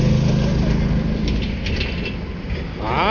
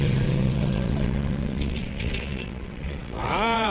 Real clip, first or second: first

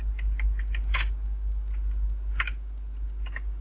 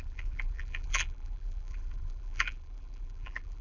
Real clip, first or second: first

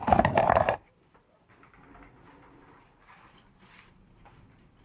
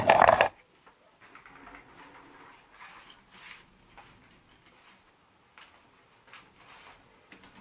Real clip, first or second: second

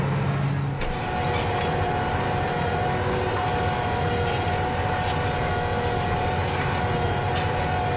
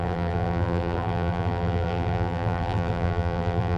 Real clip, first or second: first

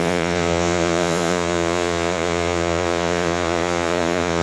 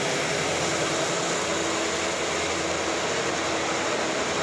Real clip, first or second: second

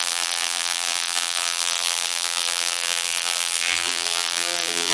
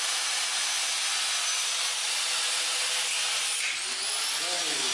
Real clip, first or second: second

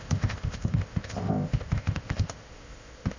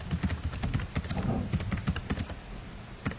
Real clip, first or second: second